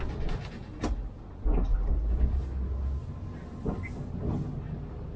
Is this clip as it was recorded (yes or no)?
yes